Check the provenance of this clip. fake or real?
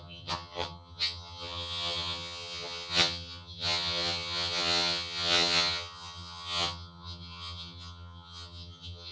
fake